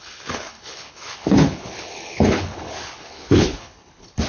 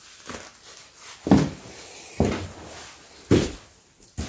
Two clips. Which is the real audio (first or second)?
second